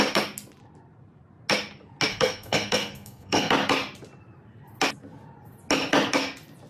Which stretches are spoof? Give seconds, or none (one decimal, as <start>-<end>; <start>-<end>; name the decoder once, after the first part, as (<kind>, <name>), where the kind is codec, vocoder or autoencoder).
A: 2.1-3.5 (codec, SNAC)